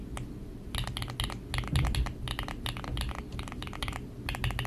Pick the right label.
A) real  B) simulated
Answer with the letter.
A